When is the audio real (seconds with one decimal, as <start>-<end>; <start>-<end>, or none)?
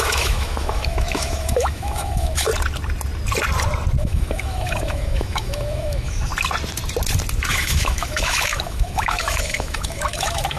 2.5-4.0; 6.3-7.5